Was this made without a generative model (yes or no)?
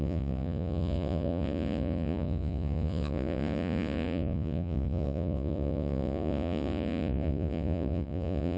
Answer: no